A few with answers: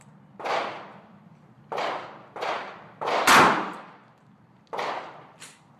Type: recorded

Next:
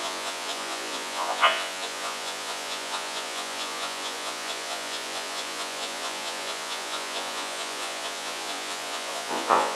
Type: remade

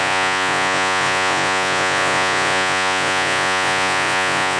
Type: remade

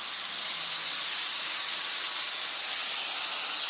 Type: recorded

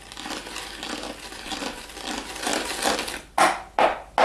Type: recorded